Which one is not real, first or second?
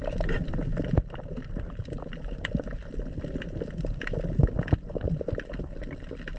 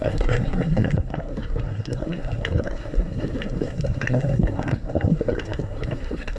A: second